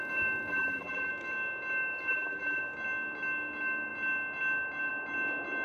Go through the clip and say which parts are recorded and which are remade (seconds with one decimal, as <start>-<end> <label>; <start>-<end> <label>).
0.0-0.5 recorded; 0.5-1.1 remade; 1.1-2.1 recorded; 2.1-2.6 remade; 2.6-5.6 recorded